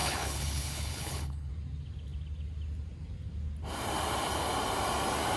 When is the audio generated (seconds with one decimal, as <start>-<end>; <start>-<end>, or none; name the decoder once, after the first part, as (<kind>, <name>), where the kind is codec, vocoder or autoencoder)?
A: 0.0-1.5 (codec, HILCodec)